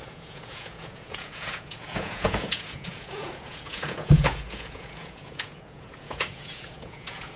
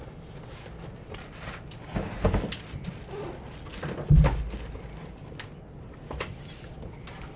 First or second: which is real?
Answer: second